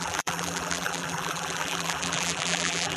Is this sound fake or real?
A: fake